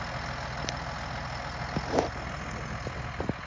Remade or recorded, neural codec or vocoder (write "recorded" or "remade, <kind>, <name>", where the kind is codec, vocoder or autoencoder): recorded